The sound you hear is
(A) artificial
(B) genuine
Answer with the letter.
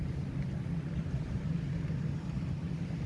B